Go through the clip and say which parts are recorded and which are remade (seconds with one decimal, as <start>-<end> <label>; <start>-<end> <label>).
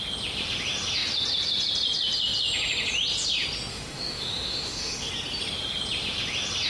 0.0-3.7 recorded; 3.7-5.1 remade; 5.1-6.7 recorded